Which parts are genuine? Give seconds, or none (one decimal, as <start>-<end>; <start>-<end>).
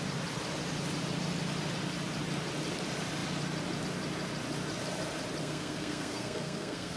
0.0-5.4